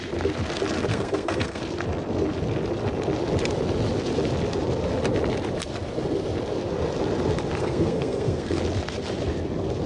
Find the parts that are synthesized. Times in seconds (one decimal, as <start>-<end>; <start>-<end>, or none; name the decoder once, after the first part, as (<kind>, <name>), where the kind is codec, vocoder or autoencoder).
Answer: 0.9-1.6 (codec, SNAC); 7.6-8.6